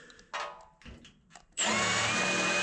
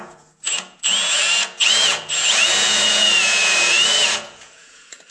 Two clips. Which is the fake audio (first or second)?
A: second